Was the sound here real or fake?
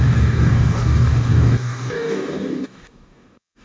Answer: fake